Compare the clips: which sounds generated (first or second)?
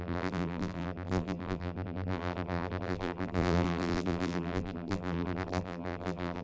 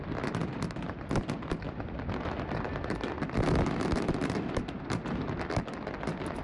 first